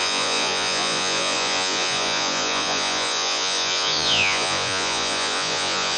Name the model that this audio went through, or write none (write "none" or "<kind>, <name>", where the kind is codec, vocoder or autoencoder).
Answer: vocoder, Vocos